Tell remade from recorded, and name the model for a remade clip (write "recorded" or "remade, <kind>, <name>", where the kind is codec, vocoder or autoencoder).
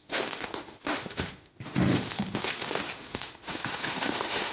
remade, autoencoder, DAC-VAE